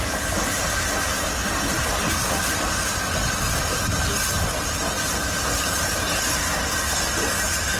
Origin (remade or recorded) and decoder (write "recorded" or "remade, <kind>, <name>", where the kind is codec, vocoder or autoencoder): recorded